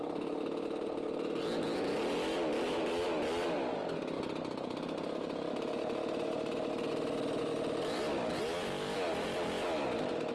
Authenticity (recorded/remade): recorded